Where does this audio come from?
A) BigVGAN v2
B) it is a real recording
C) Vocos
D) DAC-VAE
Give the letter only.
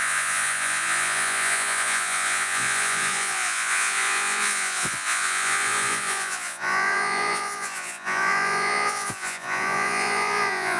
C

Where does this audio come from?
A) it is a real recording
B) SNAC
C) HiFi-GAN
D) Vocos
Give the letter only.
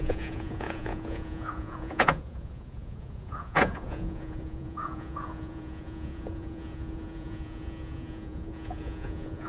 D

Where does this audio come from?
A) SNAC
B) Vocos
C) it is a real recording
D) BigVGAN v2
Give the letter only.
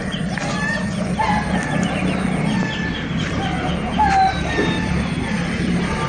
C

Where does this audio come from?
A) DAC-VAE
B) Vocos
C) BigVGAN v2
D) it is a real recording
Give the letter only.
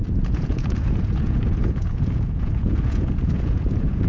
B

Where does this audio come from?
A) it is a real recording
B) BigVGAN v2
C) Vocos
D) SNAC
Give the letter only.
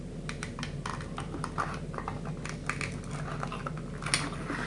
A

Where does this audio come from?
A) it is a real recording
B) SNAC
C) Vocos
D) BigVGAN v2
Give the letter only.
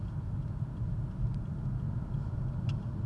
A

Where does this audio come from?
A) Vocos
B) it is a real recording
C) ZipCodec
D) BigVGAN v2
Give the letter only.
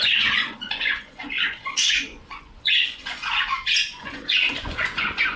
A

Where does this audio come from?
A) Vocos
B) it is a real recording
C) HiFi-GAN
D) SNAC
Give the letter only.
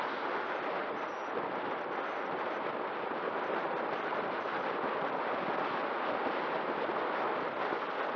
B